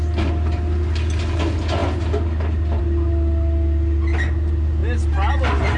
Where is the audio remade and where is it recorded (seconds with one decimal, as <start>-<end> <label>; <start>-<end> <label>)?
0.0-5.8 recorded